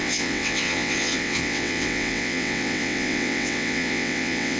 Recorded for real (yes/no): no